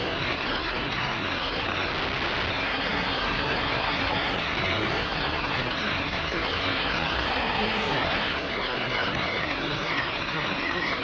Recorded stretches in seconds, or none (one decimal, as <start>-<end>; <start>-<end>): 1.9-2.5